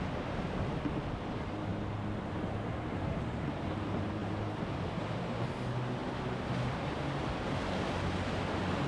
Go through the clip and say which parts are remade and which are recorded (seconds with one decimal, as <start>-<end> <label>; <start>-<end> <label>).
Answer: 0.0-8.9 recorded